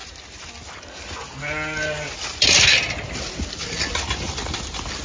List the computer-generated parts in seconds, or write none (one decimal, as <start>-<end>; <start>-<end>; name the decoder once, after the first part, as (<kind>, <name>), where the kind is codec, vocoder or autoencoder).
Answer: none

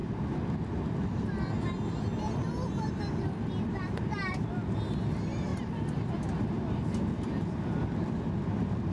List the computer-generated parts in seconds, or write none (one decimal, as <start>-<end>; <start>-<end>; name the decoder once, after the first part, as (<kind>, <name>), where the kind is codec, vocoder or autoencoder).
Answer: 3.2-8.9 (vocoder, BigVGAN v2)

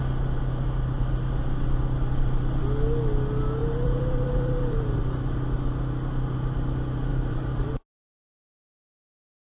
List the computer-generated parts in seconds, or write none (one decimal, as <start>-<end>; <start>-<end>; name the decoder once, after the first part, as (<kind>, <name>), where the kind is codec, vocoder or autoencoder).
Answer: 3.6-5.0 (vocoder, BigVGAN v2); 7.1-7.7

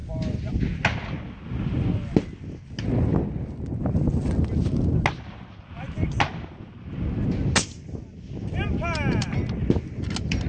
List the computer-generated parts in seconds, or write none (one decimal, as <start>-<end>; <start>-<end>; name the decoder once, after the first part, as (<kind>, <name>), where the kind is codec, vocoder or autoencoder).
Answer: 0.0-0.5 (vocoder, BigVGAN v2)

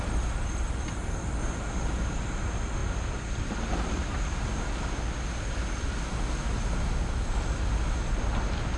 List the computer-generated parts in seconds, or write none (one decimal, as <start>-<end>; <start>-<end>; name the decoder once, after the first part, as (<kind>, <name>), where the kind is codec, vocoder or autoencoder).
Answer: none